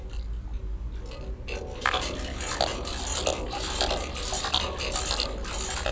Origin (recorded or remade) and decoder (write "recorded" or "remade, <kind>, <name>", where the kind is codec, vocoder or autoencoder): recorded